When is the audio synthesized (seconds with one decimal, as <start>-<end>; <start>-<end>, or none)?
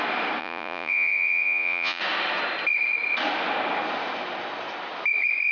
0.4-2.0